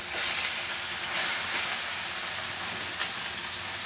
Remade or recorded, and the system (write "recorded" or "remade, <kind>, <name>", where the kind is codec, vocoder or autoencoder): recorded